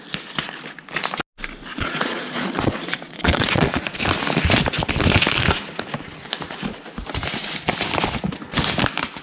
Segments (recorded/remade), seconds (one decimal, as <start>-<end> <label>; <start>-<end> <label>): 0.0-1.7 recorded; 1.7-4.0 remade; 4.0-9.2 recorded